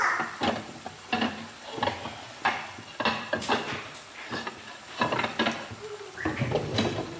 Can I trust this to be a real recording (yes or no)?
no